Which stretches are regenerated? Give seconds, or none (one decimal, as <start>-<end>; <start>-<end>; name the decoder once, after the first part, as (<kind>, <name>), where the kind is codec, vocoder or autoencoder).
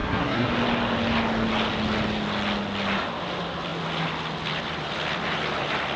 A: 0.0-0.5 (codec, SNAC)